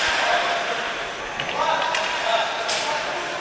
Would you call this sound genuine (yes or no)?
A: yes